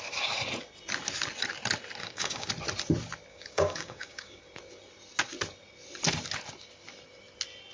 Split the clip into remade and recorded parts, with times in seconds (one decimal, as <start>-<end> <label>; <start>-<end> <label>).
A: 0.0-2.0 recorded; 2.0-2.5 remade; 2.5-3.3 recorded; 3.3-4.4 remade; 4.4-7.7 recorded